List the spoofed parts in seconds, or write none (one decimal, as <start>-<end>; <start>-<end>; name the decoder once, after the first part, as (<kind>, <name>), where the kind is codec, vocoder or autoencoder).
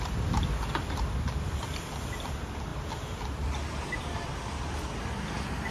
none